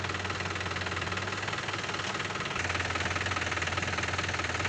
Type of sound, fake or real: real